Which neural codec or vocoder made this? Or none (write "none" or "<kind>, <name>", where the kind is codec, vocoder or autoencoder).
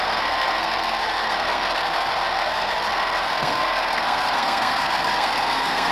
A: codec, SNAC